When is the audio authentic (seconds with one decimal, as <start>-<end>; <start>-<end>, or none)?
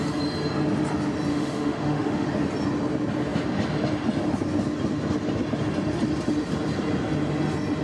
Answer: 0.0-1.3; 2.3-7.8